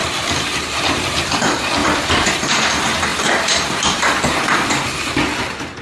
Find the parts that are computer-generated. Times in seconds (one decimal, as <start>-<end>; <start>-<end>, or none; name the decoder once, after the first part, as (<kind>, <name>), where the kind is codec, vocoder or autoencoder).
0.0-1.2 (vocoder, BigVGAN v2); 1.8-2.7; 3.1-4.5